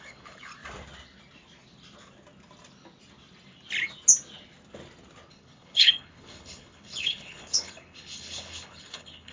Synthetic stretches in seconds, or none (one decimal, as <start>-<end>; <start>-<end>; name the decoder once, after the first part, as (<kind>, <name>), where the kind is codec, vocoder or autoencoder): 0.0-0.5 (codec, HILCodec); 5.3-9.3